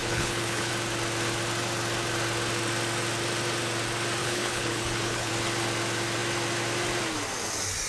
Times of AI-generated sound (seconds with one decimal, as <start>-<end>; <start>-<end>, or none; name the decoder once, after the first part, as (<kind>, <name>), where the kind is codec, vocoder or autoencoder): 0.0-0.7 (codec, HILCodec); 4.2-5.3